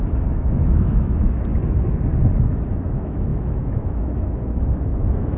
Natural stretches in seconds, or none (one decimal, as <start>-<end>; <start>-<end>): 1.5-2.7